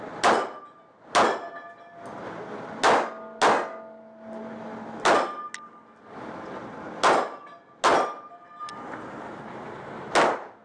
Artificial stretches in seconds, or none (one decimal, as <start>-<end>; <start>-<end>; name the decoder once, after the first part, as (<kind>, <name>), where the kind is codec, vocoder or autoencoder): none